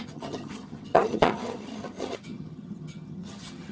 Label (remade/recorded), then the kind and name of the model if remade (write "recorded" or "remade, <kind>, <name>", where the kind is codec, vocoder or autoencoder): remade, vocoder, HiFi-GAN